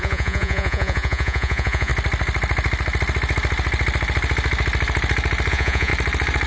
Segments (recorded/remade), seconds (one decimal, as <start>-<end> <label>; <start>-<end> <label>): 0.0-1.9 remade; 1.9-5.5 recorded; 5.5-5.9 remade; 5.9-6.5 recorded